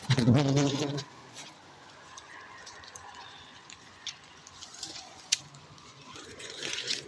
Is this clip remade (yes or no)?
yes